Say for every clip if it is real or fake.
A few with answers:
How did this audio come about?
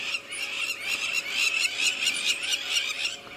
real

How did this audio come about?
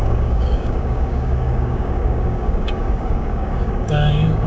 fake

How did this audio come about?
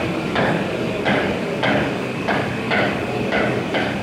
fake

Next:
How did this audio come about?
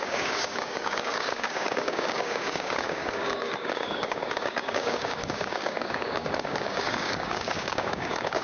fake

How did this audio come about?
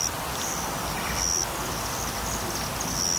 real